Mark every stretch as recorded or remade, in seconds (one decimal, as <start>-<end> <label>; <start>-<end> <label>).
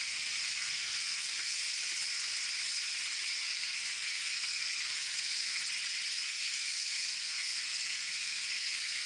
0.0-1.6 remade; 1.6-3.4 recorded; 3.4-5.6 remade; 5.6-6.1 recorded; 6.1-9.1 remade